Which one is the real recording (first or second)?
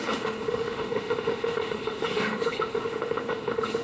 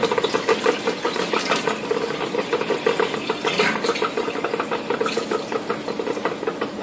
second